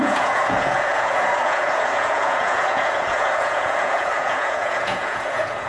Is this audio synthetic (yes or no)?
yes